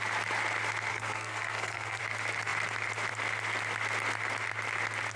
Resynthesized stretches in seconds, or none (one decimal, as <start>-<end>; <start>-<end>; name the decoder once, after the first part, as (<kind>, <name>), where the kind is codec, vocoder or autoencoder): 0.9-2.0 (codec, SNAC)